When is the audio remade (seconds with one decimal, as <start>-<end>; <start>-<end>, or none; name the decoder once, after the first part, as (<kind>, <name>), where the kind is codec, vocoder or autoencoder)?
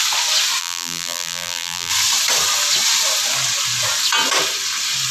0.6-1.9 (vocoder, BigVGAN v2)